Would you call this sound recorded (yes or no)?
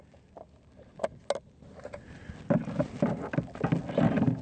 yes